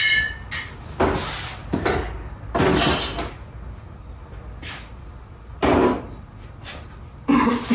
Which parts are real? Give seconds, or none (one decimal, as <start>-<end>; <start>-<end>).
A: 0.0-7.7